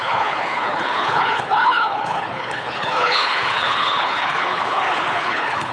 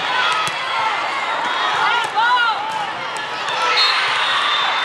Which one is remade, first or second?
first